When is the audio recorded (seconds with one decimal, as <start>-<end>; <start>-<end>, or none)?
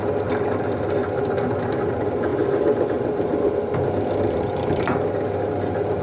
1.0-1.9; 2.3-6.0